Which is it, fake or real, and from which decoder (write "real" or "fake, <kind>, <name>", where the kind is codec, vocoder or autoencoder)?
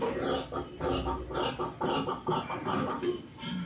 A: real